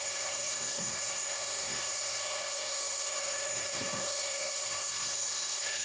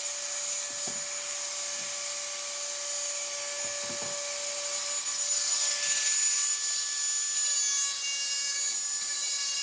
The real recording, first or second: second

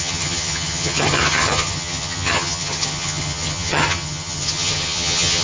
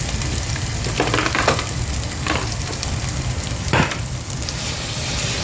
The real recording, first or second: second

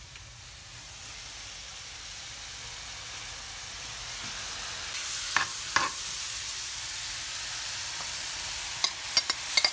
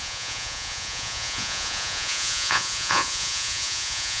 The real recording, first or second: first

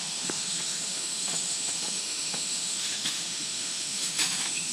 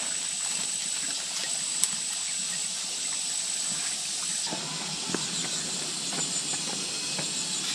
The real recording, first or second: second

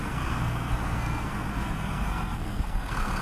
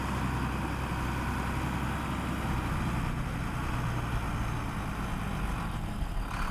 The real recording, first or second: second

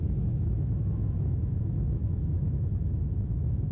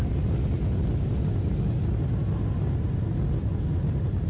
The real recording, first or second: second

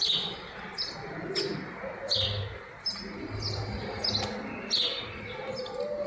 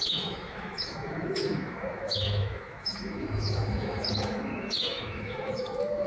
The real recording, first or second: first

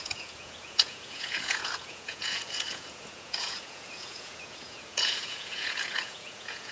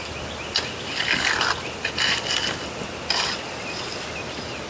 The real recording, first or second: second